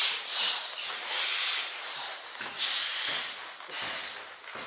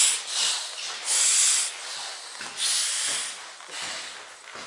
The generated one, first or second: first